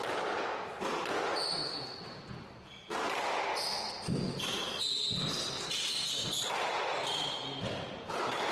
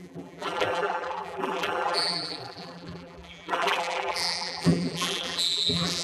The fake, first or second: second